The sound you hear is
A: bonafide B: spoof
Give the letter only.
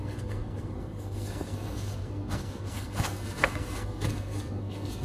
B